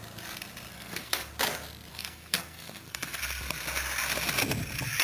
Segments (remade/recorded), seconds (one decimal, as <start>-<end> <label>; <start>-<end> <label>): 0.0-0.7 recorded; 0.7-1.3 remade; 1.3-1.9 recorded; 1.9-3.2 remade; 3.2-5.0 recorded